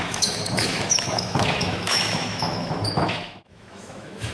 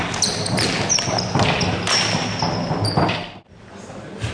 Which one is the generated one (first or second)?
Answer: first